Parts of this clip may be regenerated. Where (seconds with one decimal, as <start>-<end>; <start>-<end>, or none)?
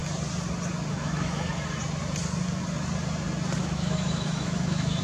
0.9-1.5; 3.6-5.0